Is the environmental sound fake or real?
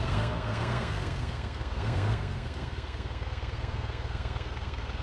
fake